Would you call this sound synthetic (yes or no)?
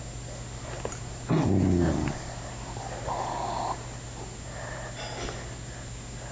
no